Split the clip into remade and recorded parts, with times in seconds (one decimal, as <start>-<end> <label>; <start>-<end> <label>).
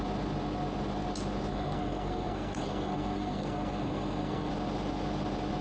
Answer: 0.0-1.5 recorded; 1.5-4.5 remade; 4.5-5.6 recorded